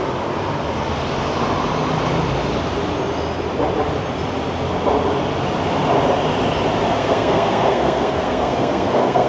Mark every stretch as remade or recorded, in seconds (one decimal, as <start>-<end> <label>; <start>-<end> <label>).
0.0-6.9 recorded; 6.9-9.3 remade